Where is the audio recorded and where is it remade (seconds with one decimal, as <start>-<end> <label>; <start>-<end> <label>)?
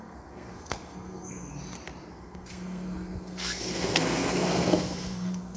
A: 0.0-1.5 remade; 1.5-2.1 recorded; 2.1-5.6 remade